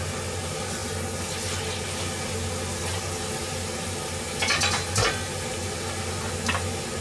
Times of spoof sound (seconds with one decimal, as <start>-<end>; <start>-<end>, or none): none